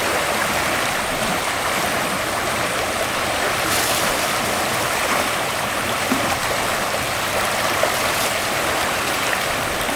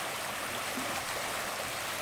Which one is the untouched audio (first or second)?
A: second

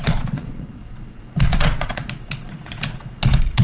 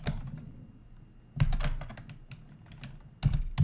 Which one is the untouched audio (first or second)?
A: second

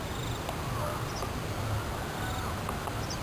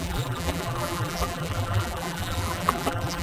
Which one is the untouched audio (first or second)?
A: first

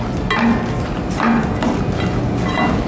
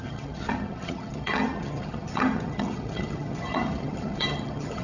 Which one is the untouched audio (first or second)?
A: first